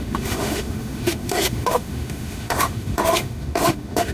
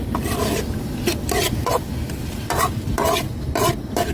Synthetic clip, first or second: first